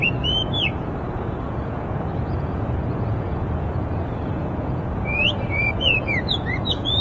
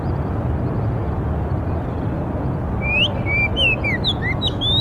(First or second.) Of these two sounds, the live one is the second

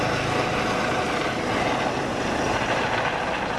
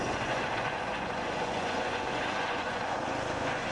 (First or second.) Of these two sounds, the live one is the first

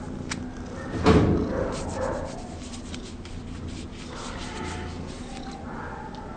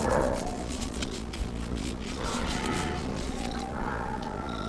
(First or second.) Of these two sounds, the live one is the first